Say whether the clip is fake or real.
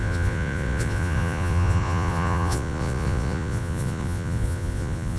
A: fake